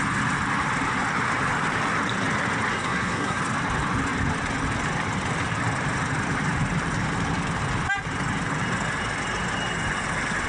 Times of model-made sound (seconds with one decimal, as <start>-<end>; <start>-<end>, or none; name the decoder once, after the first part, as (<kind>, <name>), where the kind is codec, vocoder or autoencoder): 2.7-3.4 (codec, SNAC)